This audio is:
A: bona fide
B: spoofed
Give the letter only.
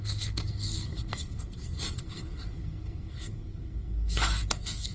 B